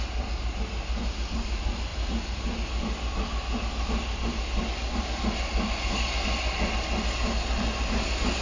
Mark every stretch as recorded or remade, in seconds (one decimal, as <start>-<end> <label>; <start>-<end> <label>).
0.0-8.4 recorded